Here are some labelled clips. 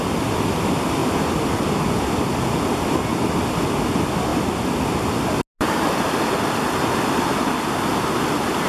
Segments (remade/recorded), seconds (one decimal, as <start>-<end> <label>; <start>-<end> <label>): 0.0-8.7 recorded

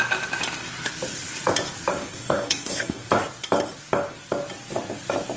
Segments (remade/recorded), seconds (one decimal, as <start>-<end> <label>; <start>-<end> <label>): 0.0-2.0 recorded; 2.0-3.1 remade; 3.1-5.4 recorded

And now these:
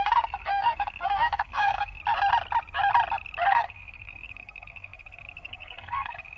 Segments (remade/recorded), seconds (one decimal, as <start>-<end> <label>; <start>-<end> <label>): 0.0-2.0 remade; 2.0-3.5 recorded; 3.5-6.4 remade

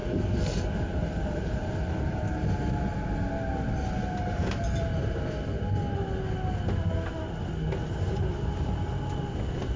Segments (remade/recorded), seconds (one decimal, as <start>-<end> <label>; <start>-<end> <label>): 0.0-0.6 remade; 0.6-9.8 recorded

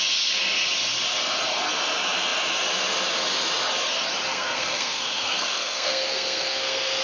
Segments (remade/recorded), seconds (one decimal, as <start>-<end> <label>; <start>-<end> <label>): 0.0-4.3 recorded; 4.3-7.0 remade

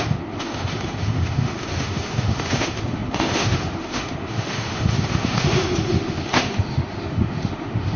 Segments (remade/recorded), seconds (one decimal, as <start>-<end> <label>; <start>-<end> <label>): 0.0-8.0 remade

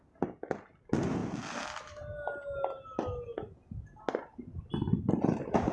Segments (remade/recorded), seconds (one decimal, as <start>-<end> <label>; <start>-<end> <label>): 0.0-5.7 recorded